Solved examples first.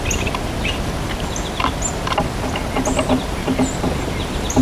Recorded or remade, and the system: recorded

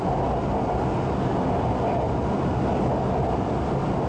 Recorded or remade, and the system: recorded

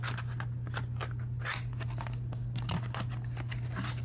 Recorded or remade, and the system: recorded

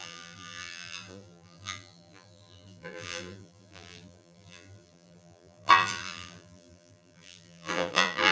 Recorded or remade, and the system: remade, vocoder, BigVGAN v2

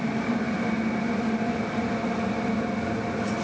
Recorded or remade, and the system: recorded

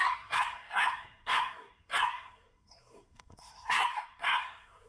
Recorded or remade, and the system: remade, codec, SNAC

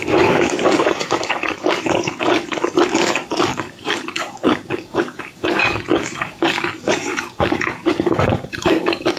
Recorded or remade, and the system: remade, codec, DAC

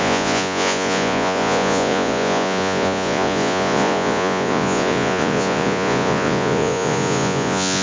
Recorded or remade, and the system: remade, vocoder, Vocos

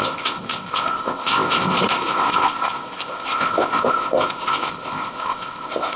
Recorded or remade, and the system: remade, codec, ZipCodec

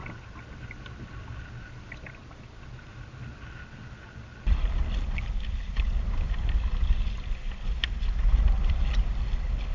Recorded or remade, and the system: recorded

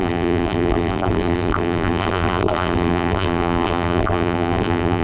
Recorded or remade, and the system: remade, vocoder, BigVGAN v2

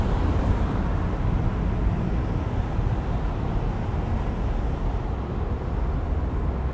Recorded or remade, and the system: recorded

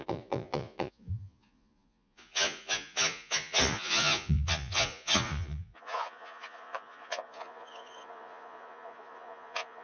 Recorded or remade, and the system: remade, vocoder, Vocos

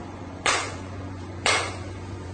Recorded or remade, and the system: remade, vocoder, Vocos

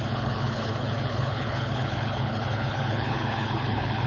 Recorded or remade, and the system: remade, codec, HILCodec